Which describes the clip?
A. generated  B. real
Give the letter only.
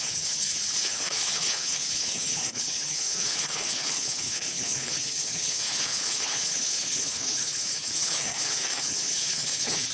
A